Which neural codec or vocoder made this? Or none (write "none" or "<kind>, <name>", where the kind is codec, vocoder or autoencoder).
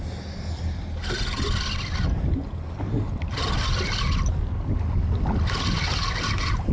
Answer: none